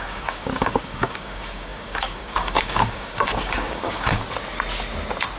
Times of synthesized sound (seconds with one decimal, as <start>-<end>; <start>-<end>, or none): 0.0-4.2